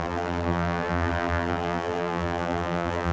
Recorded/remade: remade